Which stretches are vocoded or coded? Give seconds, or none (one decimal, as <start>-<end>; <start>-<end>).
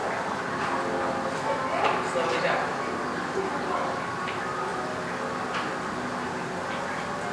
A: none